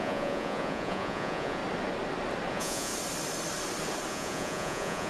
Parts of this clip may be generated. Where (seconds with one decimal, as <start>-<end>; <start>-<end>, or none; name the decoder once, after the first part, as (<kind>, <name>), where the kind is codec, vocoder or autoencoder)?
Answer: 0.0-1.6 (vocoder, Vocos); 2.5-2.9; 4.1-5.1